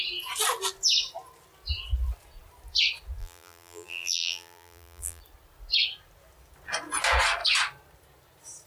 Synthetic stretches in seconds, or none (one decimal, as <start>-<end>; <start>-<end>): 3.2-5.2